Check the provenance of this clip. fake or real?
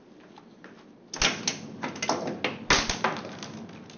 real